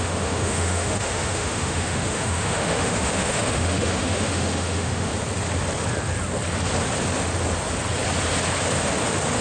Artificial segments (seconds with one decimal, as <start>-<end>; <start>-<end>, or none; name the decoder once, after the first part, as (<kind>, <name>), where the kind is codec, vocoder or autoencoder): 0.0-5.1 (autoencoder, DAC-VAE)